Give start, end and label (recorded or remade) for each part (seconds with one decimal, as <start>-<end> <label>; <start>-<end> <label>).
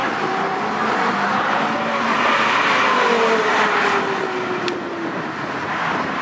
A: 0.0-6.2 recorded